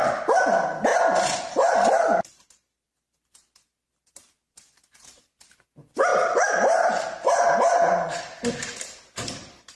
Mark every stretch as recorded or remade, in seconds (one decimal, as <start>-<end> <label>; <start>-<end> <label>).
0.0-0.9 recorded; 0.9-3.3 remade; 3.3-6.1 recorded; 6.1-7.5 remade; 7.5-9.7 recorded

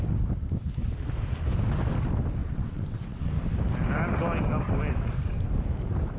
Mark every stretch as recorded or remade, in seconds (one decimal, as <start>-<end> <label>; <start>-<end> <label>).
0.0-2.4 recorded; 2.4-3.3 remade; 3.3-6.2 recorded